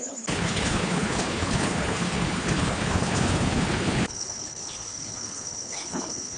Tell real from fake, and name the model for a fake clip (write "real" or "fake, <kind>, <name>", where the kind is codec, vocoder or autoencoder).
fake, codec, HILCodec